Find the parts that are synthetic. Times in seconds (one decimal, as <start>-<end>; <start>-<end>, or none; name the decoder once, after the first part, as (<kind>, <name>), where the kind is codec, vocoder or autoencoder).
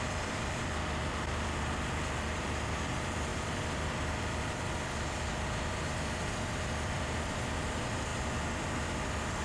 0.0-9.4 (vocoder, BigVGAN v2)